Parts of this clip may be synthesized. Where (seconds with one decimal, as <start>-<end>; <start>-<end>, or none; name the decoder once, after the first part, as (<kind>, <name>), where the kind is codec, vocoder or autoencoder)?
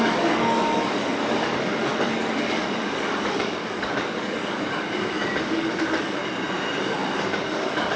0.0-6.2 (codec, DAC); 6.8-8.0